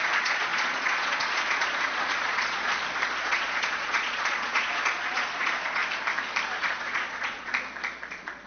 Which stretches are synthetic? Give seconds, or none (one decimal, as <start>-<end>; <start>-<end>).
0.0-2.7; 3.2-5.8; 6.6-7.5; 8.1-8.5